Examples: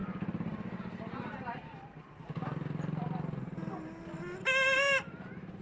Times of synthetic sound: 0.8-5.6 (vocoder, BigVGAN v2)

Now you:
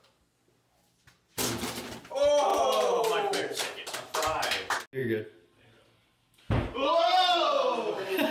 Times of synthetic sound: 2.5-3.4 (vocoder, BigVGAN v2); 5.0-6.0

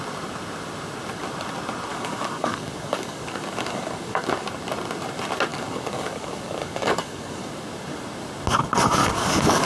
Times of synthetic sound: 1.9-4.5 (codec, DAC); 5.5-7.5; 9.0-9.7